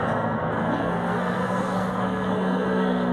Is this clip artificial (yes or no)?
yes